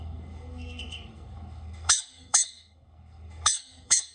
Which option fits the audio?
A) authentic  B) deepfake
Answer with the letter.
B